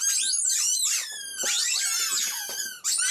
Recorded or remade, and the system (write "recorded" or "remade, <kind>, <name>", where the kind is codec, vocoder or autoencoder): recorded